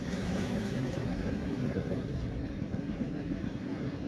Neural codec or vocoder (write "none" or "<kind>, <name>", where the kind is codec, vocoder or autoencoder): codec, SNAC